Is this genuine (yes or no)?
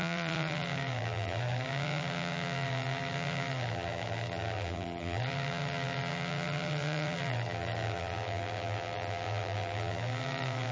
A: no